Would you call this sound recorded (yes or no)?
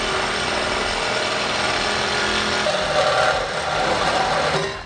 yes